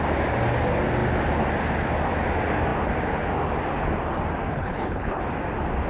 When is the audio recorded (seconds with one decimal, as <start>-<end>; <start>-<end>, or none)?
0.0-4.5; 5.2-5.9